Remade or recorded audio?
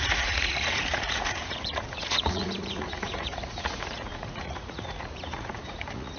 remade